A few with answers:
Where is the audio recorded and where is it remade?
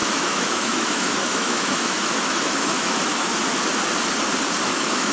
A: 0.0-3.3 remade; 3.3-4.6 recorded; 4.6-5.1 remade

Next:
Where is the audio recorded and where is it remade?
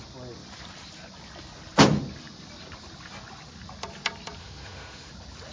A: 0.0-4.4 recorded; 4.4-5.1 remade; 5.1-5.5 recorded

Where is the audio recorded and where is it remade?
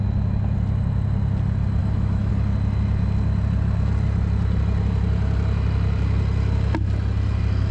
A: 0.0-1.8 recorded; 1.8-2.3 remade; 2.3-7.7 recorded